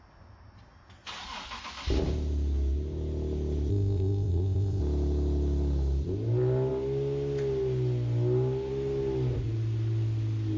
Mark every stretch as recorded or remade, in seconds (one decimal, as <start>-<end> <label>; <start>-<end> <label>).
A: 0.0-3.7 recorded; 3.7-4.8 remade; 4.8-10.6 recorded